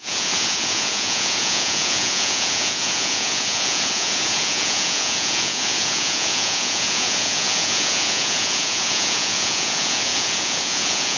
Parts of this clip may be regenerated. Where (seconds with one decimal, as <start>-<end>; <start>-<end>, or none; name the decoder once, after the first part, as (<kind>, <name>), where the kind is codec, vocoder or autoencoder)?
0.0-11.2 (vocoder, Vocos)